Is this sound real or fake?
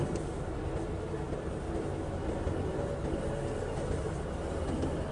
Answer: real